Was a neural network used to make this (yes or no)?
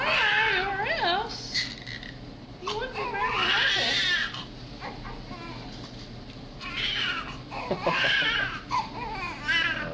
no